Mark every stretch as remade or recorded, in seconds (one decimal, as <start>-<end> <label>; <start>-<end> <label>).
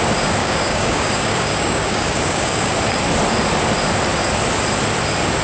0.0-0.4 recorded; 0.4-2.7 remade; 2.7-5.4 recorded